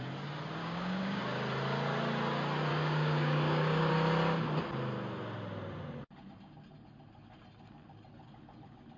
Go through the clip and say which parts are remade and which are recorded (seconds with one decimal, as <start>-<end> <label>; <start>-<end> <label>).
0.0-0.6 recorded; 0.6-1.2 remade; 1.2-2.7 recorded; 2.7-3.9 remade; 3.9-9.0 recorded